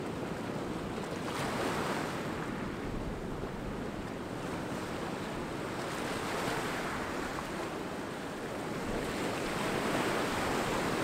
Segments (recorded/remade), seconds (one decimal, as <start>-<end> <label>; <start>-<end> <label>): 0.0-11.0 recorded